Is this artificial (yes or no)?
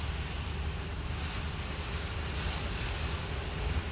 no